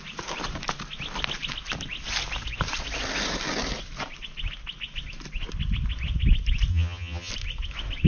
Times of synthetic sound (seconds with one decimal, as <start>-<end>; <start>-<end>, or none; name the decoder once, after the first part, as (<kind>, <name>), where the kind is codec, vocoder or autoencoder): 6.7-7.3 (vocoder, HiFi-GAN)